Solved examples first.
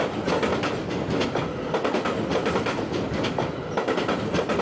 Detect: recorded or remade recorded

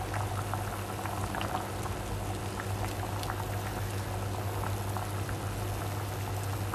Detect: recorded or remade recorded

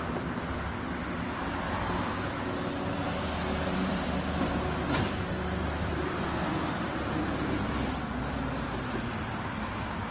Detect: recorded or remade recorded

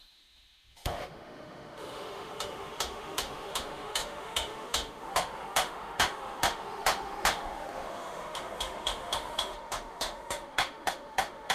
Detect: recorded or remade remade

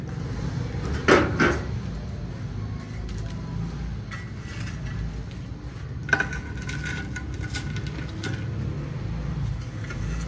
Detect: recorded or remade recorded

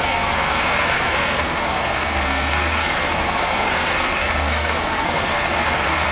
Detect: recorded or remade remade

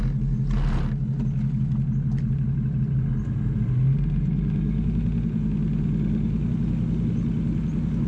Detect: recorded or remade recorded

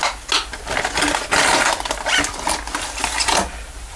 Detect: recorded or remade recorded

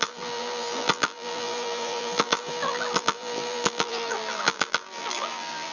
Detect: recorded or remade remade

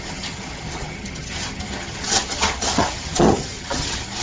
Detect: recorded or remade remade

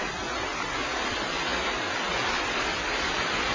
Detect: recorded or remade recorded